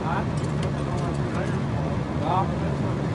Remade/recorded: remade